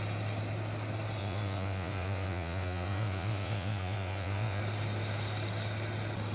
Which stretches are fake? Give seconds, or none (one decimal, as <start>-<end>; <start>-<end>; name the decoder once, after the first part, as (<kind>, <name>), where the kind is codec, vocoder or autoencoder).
1.2-4.6 (vocoder, Vocos)